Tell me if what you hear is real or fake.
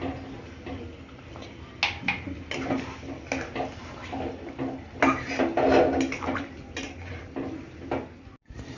real